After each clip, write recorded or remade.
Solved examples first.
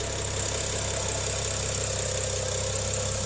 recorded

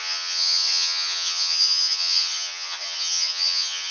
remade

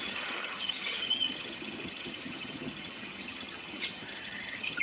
remade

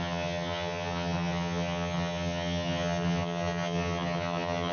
remade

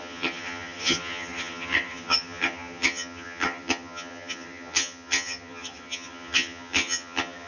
remade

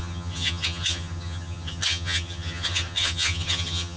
remade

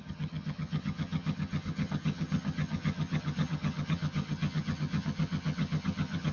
remade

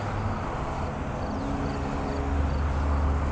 recorded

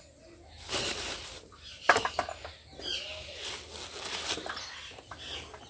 recorded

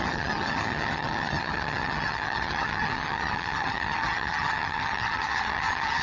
remade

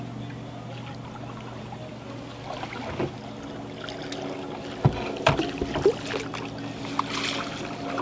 recorded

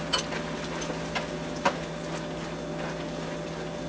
recorded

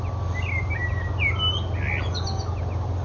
recorded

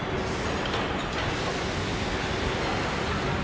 recorded